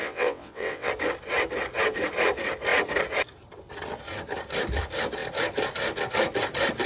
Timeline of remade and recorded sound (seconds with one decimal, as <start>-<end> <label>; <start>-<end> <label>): 0.0-0.9 remade; 0.9-6.9 recorded